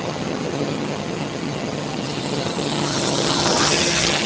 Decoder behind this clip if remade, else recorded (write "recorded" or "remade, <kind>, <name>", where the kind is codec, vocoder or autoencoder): remade, vocoder, HiFi-GAN